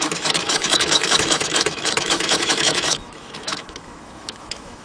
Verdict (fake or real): fake